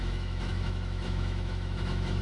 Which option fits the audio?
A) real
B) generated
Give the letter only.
B